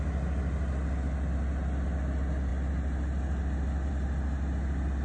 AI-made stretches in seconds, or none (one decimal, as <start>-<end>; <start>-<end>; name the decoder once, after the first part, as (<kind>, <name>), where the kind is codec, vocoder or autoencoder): none